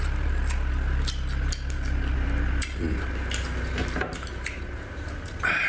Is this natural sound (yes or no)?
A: yes